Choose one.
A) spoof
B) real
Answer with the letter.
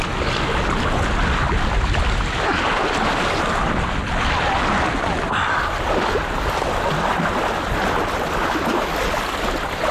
B